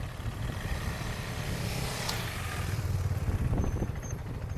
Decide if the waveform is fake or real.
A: fake